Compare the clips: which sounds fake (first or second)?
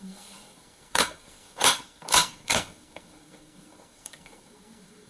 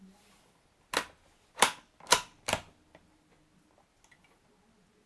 first